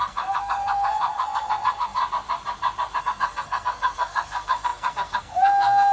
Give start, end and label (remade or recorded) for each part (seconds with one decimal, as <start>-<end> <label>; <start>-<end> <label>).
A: 0.0-2.0 remade; 2.0-3.0 recorded; 3.0-5.9 remade